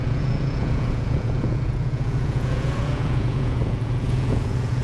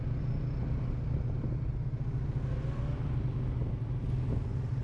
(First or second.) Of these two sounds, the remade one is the first